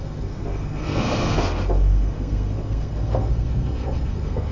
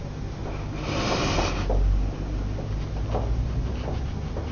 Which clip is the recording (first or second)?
second